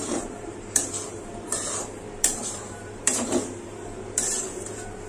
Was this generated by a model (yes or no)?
yes